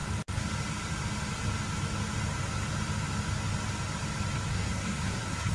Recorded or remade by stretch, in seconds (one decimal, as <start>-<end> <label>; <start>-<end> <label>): 0.0-4.5 recorded; 4.5-5.5 remade